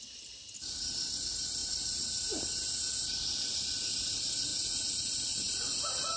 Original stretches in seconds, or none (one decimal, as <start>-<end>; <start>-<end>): none